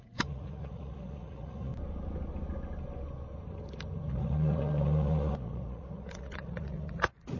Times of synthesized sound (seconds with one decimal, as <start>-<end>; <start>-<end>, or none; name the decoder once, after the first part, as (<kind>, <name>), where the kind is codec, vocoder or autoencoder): 0.0-1.7 (vocoder, Vocos); 4.1-7.4